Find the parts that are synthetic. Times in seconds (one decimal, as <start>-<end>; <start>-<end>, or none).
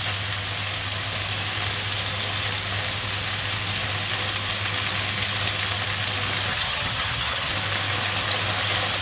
6.5-7.5